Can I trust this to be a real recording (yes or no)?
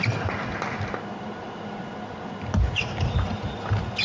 yes